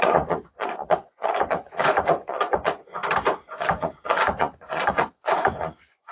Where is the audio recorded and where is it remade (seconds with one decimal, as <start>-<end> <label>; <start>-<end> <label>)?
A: 0.0-3.0 remade; 3.0-3.5 recorded; 3.5-6.1 remade